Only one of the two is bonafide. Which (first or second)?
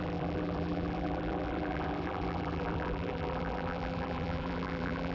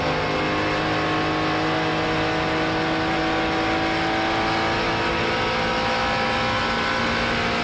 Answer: second